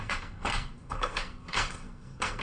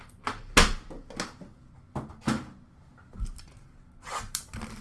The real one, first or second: second